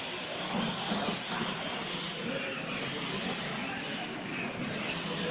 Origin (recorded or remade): recorded